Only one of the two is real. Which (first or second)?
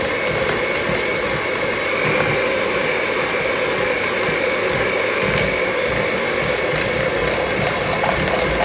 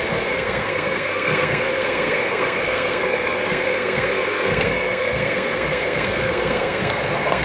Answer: first